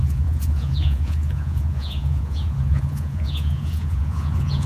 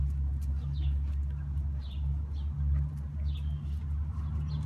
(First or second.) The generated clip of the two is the first